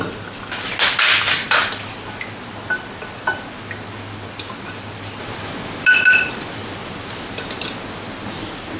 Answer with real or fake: real